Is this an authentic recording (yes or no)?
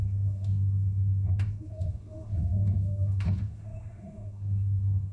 no